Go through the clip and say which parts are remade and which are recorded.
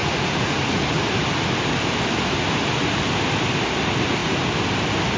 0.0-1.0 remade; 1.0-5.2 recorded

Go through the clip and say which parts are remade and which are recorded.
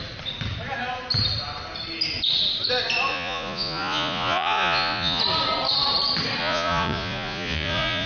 0.0-3.1 recorded; 3.1-5.2 remade; 5.2-6.4 recorded; 6.4-8.1 remade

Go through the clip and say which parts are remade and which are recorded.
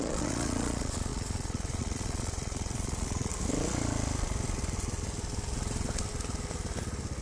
0.0-3.3 remade; 3.3-7.2 recorded